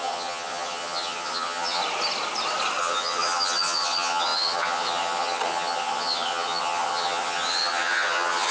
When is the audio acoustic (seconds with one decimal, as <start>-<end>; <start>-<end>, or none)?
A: 1.8-2.8